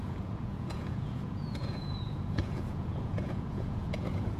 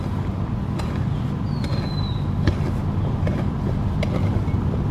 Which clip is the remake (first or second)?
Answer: first